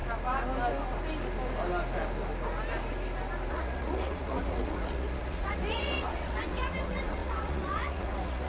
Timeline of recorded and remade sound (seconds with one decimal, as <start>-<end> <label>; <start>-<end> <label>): 0.0-3.5 recorded; 3.5-8.5 remade